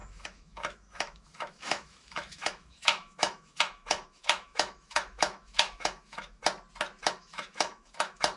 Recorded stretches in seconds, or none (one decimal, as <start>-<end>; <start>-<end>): 6.4-7.1